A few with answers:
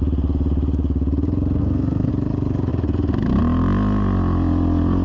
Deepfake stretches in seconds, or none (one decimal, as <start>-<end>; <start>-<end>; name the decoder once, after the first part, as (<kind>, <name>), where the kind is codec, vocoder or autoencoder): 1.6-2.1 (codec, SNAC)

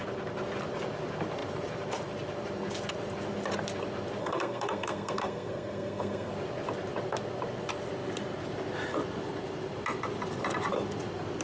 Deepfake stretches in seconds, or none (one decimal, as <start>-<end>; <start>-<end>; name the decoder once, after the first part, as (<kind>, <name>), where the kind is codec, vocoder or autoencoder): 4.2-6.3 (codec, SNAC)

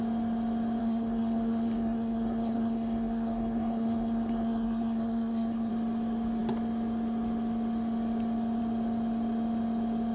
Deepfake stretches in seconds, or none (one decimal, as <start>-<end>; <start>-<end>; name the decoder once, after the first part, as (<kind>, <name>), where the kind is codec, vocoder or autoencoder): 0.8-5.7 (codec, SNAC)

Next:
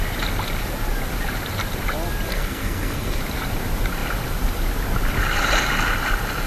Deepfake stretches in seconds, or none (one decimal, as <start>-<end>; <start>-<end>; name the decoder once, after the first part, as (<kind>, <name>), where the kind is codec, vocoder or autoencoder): 2.3-3.2 (codec, SNAC)

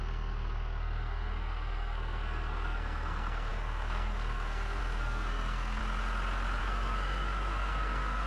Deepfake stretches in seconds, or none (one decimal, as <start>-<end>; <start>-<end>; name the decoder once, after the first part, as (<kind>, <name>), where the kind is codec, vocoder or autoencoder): 0.0-5.8 (codec, SNAC); 6.6-8.3

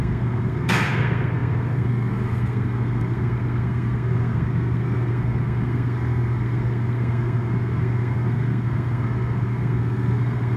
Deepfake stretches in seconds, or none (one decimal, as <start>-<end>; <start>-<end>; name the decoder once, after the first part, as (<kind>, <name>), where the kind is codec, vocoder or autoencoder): 0.0-10.6 (codec, SNAC)

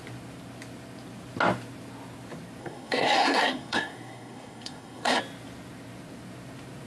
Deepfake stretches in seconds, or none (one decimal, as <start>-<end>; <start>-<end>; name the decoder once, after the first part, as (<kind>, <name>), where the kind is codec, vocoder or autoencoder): 2.6-5.2 (codec, SNAC)